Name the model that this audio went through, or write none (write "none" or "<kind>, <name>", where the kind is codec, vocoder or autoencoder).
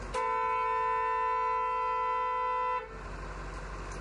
none